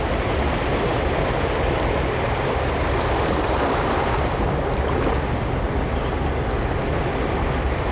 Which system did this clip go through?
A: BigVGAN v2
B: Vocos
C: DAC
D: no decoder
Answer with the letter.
D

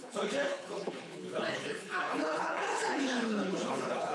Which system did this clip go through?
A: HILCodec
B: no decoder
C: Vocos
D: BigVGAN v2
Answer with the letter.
A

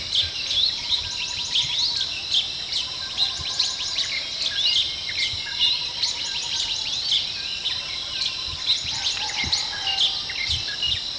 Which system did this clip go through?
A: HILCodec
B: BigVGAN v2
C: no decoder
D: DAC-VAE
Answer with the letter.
C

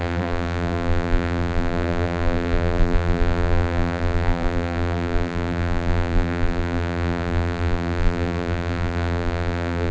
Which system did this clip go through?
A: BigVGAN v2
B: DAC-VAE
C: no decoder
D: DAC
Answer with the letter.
A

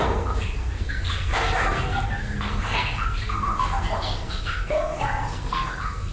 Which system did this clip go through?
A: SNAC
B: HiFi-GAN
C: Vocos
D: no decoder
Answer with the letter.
A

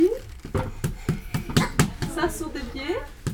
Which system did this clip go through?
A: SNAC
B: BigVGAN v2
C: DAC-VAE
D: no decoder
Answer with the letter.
D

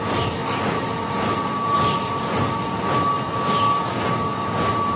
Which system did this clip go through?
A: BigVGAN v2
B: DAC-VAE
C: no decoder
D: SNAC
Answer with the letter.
C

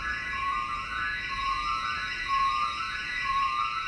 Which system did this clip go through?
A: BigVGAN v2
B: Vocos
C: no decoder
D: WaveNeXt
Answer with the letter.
B